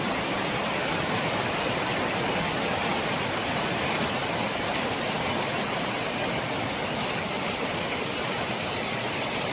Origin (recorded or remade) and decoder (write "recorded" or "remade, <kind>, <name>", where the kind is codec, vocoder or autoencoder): recorded